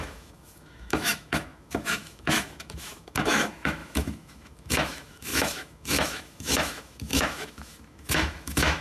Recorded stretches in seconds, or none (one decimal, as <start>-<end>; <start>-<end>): none